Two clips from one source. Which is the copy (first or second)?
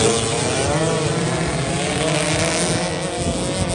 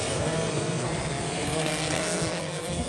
second